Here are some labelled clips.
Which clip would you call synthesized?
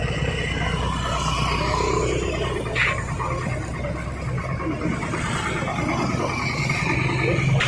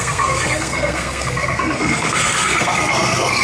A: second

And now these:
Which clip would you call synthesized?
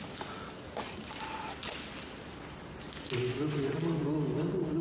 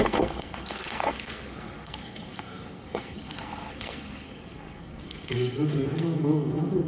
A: second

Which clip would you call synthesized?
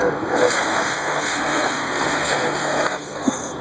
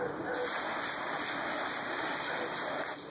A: first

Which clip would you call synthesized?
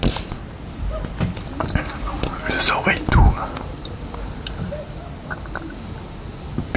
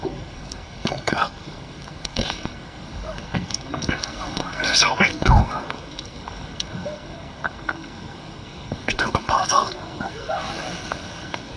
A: second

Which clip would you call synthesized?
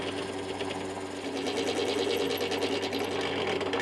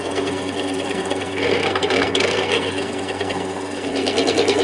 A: second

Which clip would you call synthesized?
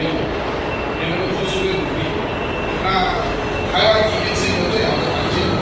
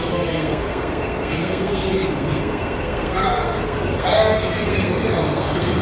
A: second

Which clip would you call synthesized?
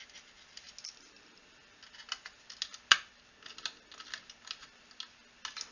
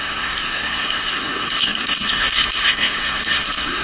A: second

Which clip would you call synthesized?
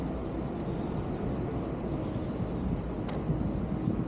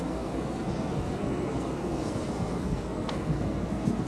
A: second